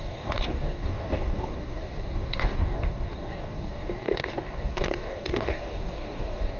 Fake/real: fake